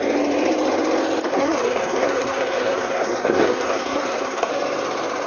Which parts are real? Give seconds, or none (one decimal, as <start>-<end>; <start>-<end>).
0.0-1.3; 4.5-5.3